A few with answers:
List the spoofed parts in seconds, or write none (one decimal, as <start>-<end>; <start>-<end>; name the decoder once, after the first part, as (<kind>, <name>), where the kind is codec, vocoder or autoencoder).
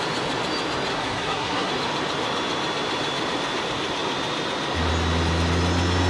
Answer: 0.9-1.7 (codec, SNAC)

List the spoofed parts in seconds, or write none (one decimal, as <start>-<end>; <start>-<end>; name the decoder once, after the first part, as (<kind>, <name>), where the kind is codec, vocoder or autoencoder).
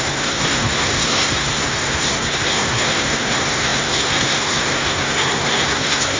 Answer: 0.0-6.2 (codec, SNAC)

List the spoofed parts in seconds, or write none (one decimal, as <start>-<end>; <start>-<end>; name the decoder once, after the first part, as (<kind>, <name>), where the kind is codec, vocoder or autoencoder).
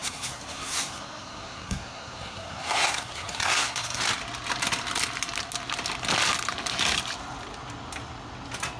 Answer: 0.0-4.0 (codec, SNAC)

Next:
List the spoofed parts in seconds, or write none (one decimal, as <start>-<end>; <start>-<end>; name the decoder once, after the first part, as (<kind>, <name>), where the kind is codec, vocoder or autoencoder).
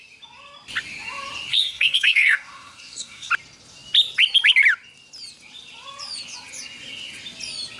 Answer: 1.5-3.3 (codec, SNAC)